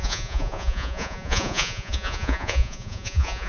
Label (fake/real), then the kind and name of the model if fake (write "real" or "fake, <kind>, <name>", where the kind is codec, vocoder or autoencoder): fake, vocoder, Vocos